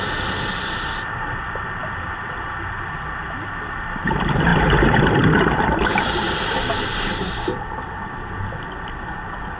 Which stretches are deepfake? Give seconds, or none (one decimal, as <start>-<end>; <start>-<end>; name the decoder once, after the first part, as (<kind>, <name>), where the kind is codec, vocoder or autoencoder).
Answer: 0.0-9.6 (vocoder, BigVGAN v2)